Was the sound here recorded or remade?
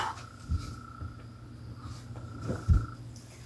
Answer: recorded